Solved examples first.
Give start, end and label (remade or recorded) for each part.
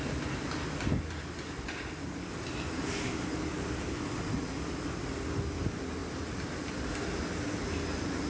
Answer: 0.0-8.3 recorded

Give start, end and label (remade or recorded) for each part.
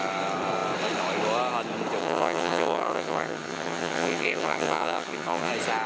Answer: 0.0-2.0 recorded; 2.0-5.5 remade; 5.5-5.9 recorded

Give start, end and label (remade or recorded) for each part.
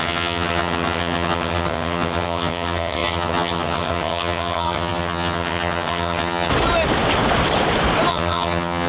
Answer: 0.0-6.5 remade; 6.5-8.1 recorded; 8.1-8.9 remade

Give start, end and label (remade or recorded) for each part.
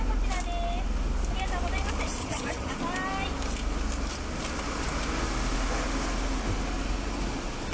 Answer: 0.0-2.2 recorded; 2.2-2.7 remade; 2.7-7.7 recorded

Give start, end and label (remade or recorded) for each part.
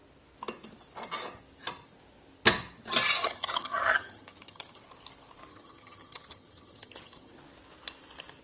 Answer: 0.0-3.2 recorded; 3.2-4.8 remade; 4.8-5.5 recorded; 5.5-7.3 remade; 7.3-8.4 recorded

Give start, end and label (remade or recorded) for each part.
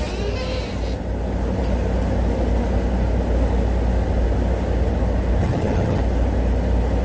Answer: 0.0-5.4 recorded; 5.4-6.0 remade; 6.0-7.0 recorded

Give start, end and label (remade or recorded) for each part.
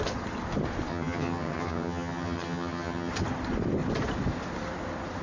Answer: 0.0-0.9 recorded; 0.9-3.1 remade; 3.1-5.2 recorded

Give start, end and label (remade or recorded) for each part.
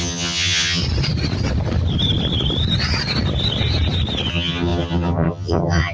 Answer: 0.0-0.8 remade; 0.8-4.3 recorded; 4.3-5.9 remade